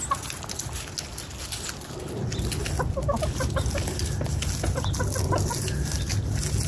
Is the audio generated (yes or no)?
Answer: no